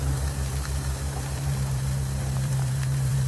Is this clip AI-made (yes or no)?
yes